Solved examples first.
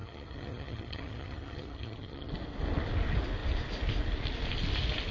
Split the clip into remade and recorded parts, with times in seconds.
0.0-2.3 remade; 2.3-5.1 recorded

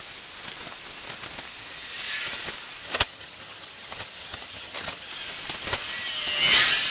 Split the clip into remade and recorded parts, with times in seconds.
0.0-2.8 recorded; 2.8-5.1 remade; 5.1-6.9 recorded

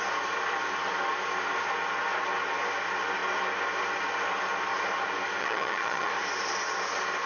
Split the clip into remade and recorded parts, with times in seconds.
0.0-5.4 recorded; 5.4-6.1 remade; 6.1-7.3 recorded

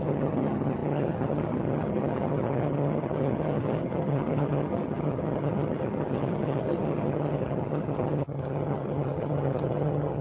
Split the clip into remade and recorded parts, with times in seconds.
0.0-10.2 remade

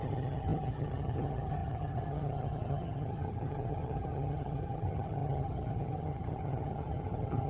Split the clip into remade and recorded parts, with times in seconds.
0.0-7.5 remade

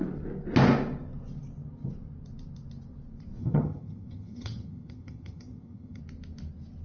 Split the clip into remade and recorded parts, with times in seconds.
0.0-3.4 recorded; 3.4-6.0 remade; 6.0-6.8 recorded

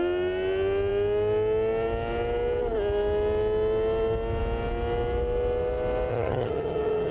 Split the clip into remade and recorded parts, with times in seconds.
0.0-6.1 recorded; 6.1-7.1 remade

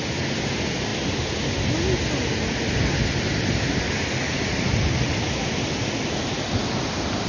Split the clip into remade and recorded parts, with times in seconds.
0.0-7.3 recorded